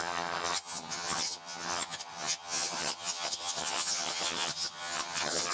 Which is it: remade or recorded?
remade